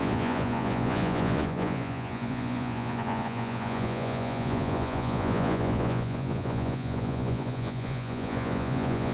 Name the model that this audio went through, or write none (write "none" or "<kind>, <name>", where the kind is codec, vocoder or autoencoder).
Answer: vocoder, Vocos